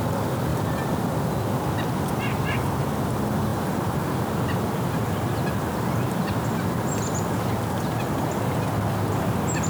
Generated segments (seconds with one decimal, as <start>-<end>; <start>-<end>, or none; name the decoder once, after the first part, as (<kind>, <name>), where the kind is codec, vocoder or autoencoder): 3.5-8.3 (vocoder, BigVGAN v2)